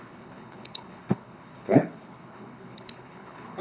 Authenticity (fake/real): fake